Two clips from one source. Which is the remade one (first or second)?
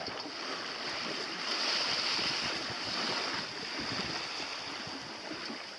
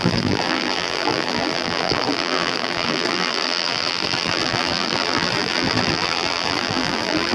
second